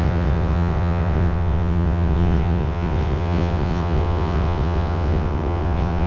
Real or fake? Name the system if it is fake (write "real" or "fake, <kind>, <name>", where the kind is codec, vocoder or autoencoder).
fake, vocoder, WaveNeXt